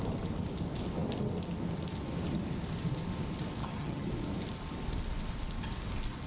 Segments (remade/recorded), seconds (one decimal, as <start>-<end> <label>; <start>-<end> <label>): 0.0-3.6 recorded; 3.6-4.1 remade; 4.1-6.3 recorded